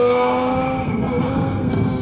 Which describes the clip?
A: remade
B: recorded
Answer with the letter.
A